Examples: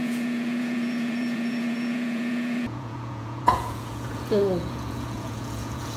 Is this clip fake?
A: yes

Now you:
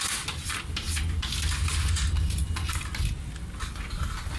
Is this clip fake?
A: no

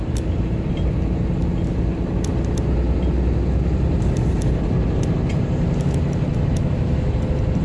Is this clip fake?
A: no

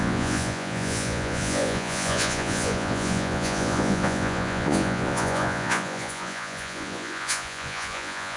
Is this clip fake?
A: yes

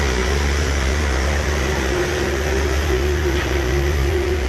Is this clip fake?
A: yes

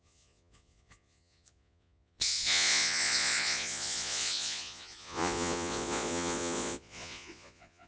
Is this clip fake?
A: yes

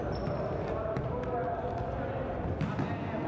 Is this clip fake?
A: no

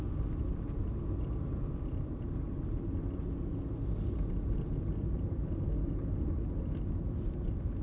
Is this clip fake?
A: no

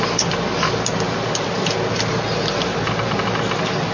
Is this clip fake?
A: no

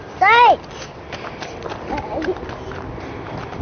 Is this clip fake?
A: no